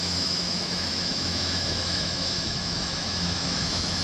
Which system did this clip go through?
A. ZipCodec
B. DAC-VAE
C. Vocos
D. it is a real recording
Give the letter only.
B